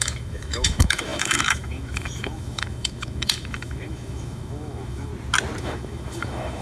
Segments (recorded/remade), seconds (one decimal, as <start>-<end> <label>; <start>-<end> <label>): 0.0-5.1 remade; 5.1-5.6 recorded; 5.6-6.6 remade